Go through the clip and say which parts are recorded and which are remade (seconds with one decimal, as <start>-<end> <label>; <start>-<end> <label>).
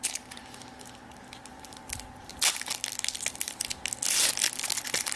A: 0.0-1.5 recorded; 1.5-2.3 remade; 2.3-5.2 recorded